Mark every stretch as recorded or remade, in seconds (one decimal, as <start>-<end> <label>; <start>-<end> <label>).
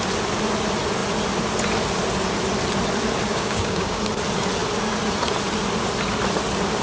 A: 0.0-3.3 recorded; 3.3-4.0 remade; 4.0-6.8 recorded